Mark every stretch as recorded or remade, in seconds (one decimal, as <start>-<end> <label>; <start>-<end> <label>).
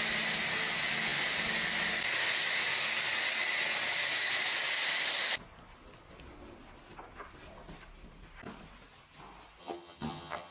0.0-9.6 recorded; 9.6-10.5 remade